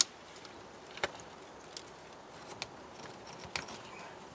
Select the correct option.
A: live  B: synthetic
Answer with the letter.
A